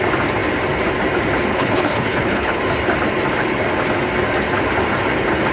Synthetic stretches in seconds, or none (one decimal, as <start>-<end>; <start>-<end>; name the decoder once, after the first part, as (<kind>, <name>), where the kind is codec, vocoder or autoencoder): 1.5-2.6 (codec, HILCodec)